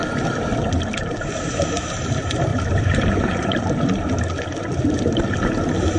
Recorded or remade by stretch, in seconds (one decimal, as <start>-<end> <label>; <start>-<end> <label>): 0.0-2.5 recorded; 2.5-3.8 remade; 3.8-4.6 recorded; 4.6-5.2 remade; 5.2-6.0 recorded